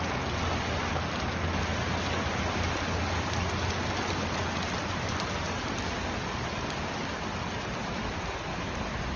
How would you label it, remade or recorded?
recorded